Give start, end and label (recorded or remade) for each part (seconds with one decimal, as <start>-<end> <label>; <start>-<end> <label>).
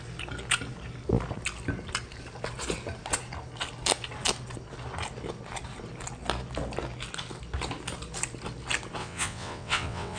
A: 0.0-9.0 recorded; 9.0-10.2 remade